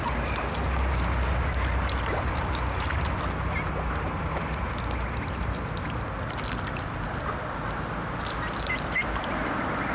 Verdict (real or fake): real